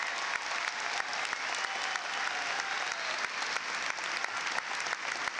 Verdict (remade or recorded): recorded